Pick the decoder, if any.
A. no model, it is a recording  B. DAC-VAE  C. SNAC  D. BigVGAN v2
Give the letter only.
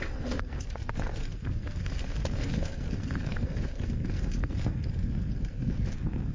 C